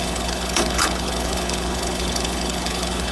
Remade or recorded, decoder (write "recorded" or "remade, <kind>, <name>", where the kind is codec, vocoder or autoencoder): remade, codec, HILCodec